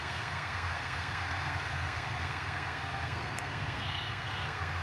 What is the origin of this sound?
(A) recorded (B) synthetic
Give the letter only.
B